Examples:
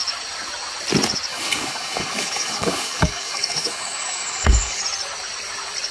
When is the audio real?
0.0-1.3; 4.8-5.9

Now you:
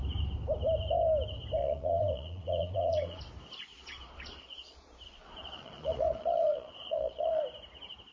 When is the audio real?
0.0-1.6; 3.2-3.7; 7.4-8.1

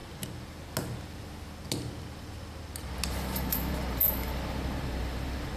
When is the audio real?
0.0-3.1

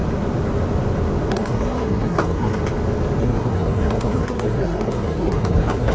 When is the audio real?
0.0-1.3; 2.6-3.2

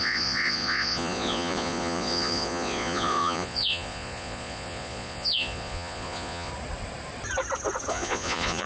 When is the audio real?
6.5-7.9

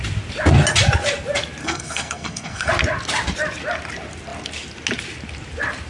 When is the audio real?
0.0-1.6; 2.7-5.9